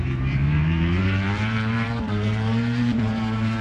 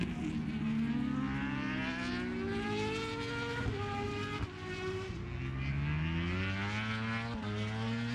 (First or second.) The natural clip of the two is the second